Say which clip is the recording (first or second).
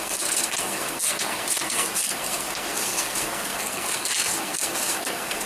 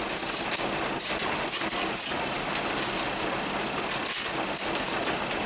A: second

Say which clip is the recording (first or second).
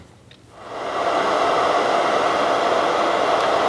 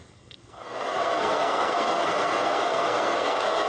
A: first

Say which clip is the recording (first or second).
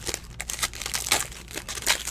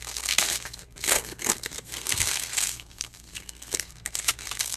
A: first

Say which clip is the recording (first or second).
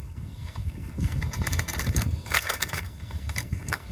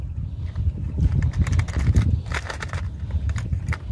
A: second